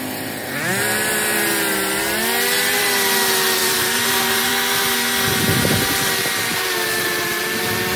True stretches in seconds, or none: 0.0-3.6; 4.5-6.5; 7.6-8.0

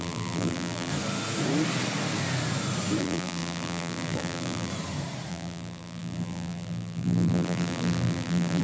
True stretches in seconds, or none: 0.9-3.0; 4.7-5.3

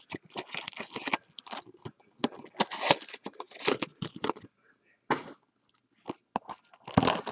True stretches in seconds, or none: 0.0-3.9; 4.8-7.3